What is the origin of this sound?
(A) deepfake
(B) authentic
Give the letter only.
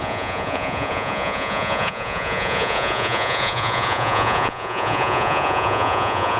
A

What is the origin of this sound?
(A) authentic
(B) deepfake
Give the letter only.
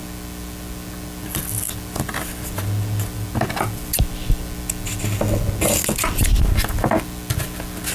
A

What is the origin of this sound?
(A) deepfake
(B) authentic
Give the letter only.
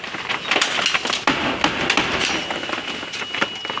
B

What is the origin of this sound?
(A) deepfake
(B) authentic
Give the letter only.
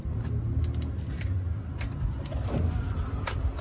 B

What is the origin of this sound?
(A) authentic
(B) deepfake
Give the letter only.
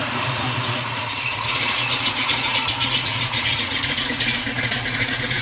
B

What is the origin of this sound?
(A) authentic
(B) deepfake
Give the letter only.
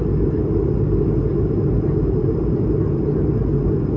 A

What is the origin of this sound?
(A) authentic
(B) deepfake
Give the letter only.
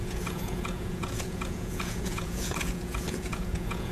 B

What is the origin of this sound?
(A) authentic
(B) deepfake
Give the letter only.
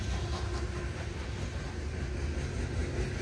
A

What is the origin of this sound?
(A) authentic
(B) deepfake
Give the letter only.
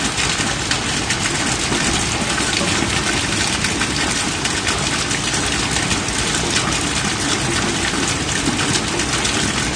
A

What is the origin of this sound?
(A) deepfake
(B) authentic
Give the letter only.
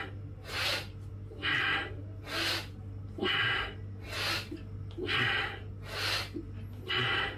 B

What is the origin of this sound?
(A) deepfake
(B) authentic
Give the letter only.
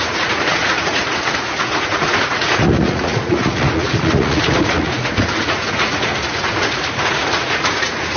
A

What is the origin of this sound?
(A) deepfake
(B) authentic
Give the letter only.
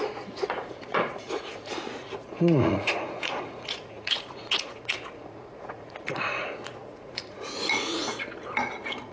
A